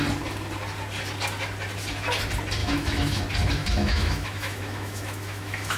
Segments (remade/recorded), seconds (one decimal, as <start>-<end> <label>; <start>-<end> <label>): 0.0-2.6 recorded; 2.6-3.2 remade; 3.2-3.6 recorded; 3.6-5.8 remade